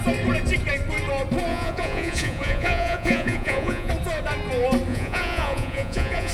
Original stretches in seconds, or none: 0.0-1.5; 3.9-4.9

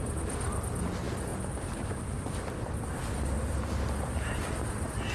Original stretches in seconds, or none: 0.0-5.1

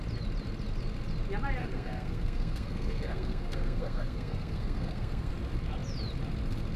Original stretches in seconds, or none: 0.0-1.6; 5.3-6.8

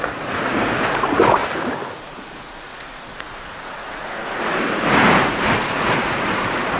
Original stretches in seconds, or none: 1.4-2.0

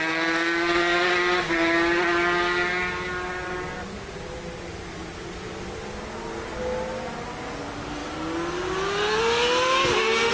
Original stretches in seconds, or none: 0.0-10.3

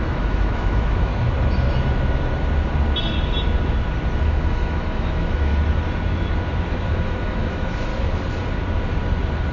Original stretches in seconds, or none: 1.1-4.2; 5.5-6.9; 7.9-9.5

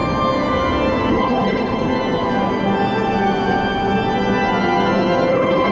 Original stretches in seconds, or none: 0.0-1.1; 1.9-5.3

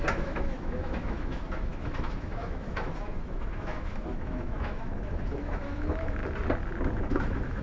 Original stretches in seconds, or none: 6.2-7.0